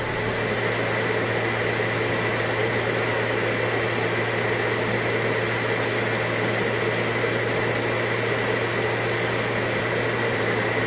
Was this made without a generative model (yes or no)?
yes